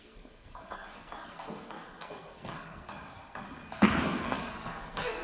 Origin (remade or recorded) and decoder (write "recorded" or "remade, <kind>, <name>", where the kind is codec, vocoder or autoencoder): remade, codec, SNAC